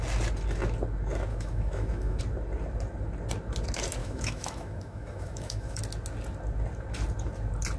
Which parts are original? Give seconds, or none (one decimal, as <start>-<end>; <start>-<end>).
0.0-1.3; 2.2-4.0; 5.8-7.8